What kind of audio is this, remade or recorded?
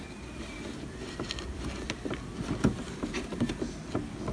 recorded